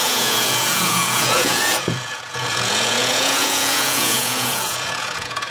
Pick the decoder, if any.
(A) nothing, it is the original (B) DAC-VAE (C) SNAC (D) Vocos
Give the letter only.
D